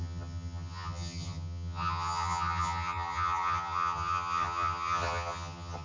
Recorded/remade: remade